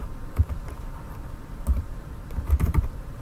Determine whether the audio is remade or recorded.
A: remade